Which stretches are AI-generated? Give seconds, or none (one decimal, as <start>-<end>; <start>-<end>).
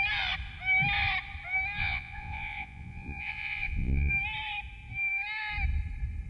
1.8-4.1